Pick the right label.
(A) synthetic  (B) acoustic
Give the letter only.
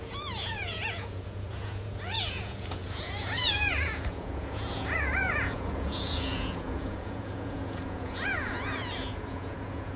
A